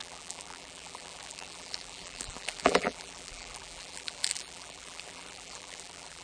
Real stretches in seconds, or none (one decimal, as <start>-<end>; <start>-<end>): none